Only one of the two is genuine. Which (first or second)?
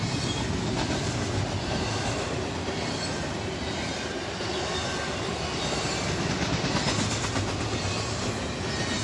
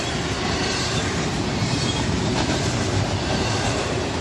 first